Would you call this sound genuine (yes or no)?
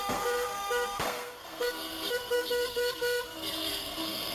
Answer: no